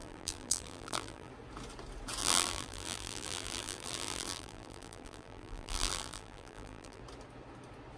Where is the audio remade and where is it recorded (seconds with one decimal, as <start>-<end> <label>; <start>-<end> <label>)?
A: 0.0-1.3 remade; 1.3-2.2 recorded; 2.2-7.0 remade; 7.0-8.0 recorded